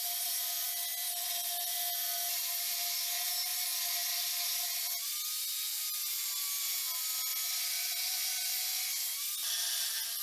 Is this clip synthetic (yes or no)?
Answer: no